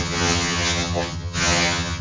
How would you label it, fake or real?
fake